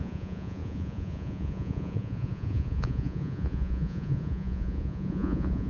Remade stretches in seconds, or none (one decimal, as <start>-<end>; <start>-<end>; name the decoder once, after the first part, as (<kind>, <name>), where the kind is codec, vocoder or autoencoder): 0.0-5.7 (vocoder, Vocos)